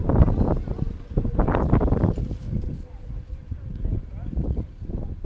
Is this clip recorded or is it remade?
remade